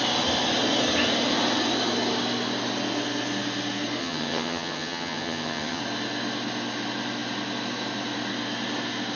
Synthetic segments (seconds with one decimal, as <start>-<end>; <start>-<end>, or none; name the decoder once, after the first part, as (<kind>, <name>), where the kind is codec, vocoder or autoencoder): 4.0-5.8 (vocoder, HiFi-GAN)